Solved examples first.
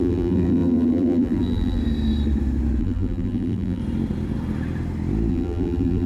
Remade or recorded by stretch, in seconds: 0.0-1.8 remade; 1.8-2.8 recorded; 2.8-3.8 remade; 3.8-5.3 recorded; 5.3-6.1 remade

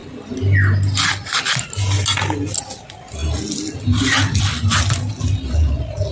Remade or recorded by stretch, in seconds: 0.0-6.1 recorded

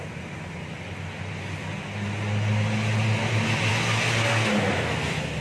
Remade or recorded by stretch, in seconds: 0.0-5.4 recorded

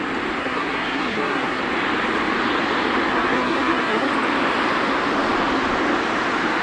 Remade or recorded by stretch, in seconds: 0.0-0.4 recorded; 0.4-1.6 remade; 1.6-3.1 recorded; 3.1-4.1 remade; 4.1-6.6 recorded

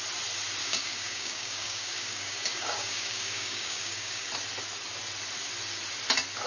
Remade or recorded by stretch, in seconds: 0.0-0.6 recorded; 0.6-4.3 remade; 4.3-6.5 recorded

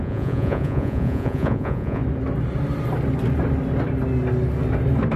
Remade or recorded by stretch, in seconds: 0.0-2.0 remade; 2.0-5.2 recorded